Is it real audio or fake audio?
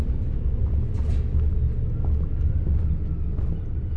real